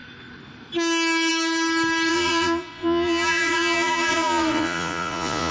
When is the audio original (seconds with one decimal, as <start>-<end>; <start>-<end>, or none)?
0.0-2.1